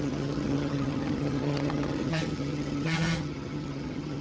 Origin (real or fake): fake